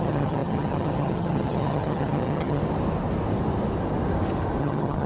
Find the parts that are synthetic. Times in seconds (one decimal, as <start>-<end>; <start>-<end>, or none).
0.0-2.6; 4.6-5.1